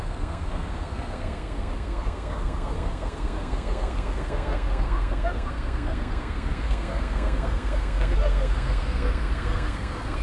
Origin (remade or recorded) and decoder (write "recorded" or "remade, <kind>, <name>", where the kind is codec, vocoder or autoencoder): remade, codec, SNAC